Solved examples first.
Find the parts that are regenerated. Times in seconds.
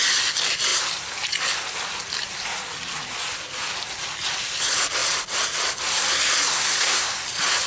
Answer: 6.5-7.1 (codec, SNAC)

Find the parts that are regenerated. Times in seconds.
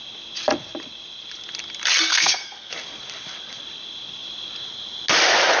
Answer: 2.1-2.7 (codec, SNAC)